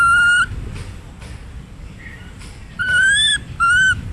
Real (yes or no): no